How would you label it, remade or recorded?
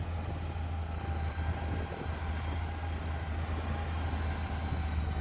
recorded